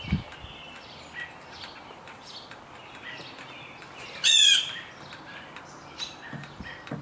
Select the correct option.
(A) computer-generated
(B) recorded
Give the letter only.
B